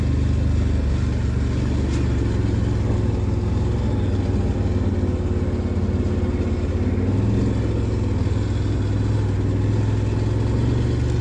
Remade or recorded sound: recorded